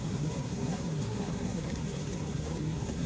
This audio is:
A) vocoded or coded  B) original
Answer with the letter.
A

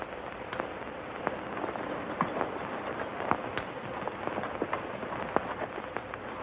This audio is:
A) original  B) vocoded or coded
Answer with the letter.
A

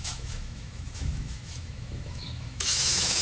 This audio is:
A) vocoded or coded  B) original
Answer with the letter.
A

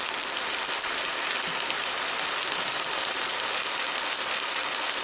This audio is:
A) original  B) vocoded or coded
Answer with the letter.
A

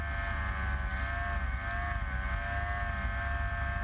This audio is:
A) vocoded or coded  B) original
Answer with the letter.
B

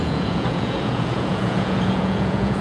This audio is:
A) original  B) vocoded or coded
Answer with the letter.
B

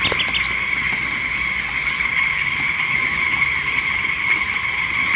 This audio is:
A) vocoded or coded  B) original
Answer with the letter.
B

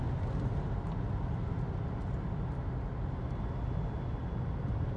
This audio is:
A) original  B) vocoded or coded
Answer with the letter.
A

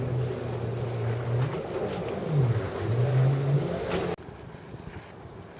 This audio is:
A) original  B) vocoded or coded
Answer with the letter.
A